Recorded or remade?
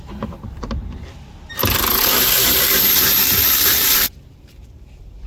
remade